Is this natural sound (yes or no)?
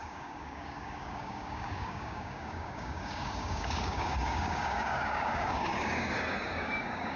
no